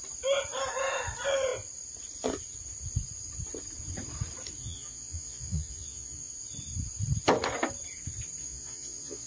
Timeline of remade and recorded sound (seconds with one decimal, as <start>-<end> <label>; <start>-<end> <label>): 0.0-4.6 recorded; 4.6-6.3 remade; 6.3-8.4 recorded; 8.4-9.3 remade